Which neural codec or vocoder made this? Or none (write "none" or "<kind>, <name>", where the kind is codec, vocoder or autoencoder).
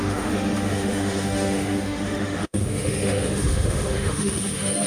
autoencoder, DAC-VAE